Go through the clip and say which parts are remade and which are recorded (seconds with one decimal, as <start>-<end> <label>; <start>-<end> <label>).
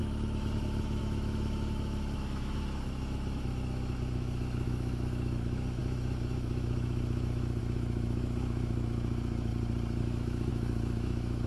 0.0-9.5 remade; 9.5-10.0 recorded; 10.0-11.5 remade